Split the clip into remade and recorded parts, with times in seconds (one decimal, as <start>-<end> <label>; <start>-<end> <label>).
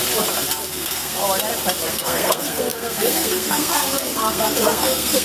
0.0-0.7 recorded; 0.7-1.2 remade; 1.2-1.9 recorded; 1.9-5.2 remade